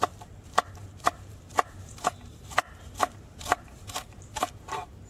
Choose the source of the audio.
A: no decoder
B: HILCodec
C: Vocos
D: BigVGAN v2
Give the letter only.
D